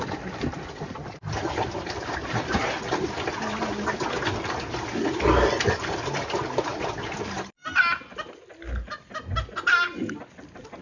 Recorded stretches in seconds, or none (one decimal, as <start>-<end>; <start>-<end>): 0.0-10.8